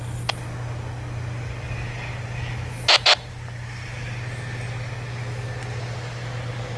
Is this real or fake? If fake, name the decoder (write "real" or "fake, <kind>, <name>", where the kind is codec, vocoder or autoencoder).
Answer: real